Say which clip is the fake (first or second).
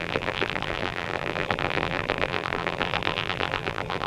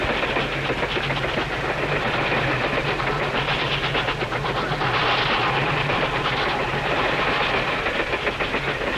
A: first